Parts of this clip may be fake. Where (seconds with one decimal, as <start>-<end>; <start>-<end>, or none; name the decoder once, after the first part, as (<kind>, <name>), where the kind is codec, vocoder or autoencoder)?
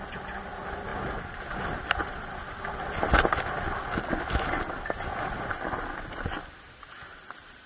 none